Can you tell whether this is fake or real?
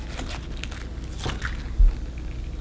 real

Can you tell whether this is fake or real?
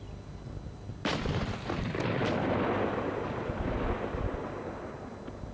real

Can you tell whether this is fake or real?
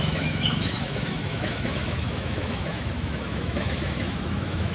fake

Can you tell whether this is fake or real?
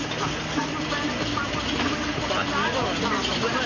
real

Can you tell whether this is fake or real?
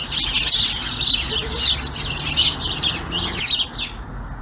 real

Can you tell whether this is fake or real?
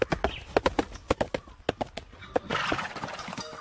real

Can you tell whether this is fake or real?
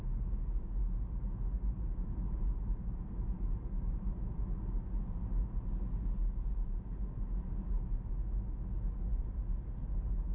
real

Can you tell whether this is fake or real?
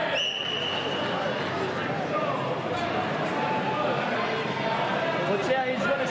real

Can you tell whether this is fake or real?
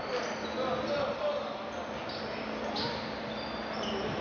real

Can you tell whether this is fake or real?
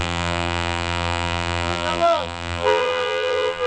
fake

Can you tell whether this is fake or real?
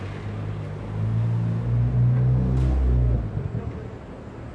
real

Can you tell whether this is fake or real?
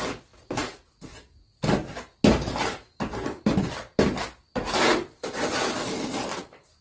real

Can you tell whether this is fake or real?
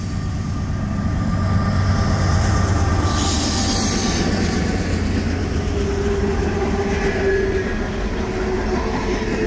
real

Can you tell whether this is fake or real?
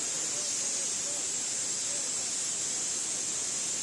real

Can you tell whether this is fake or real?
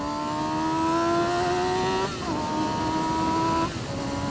real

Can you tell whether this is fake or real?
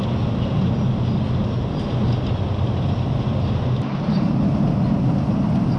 real